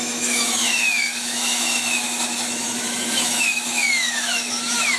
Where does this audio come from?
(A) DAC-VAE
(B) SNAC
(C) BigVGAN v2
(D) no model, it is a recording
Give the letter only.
A